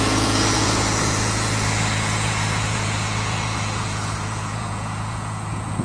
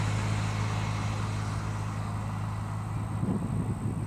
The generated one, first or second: first